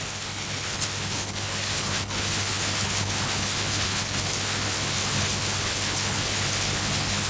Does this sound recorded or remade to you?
remade